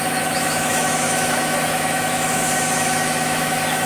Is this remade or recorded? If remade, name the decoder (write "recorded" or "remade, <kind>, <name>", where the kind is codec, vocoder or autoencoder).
remade, autoencoder, DAC-VAE